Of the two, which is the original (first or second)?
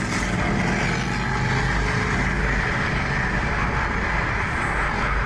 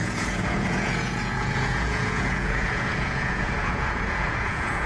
first